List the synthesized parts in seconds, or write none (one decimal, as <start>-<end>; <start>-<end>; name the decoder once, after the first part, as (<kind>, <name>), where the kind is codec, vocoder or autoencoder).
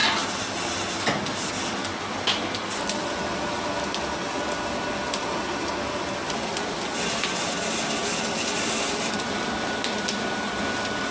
none